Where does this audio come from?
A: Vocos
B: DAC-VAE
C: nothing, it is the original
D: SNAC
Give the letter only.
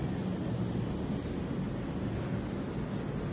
C